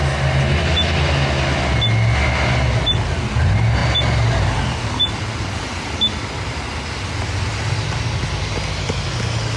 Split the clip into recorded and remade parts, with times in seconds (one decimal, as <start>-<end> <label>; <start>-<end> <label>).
0.0-9.6 recorded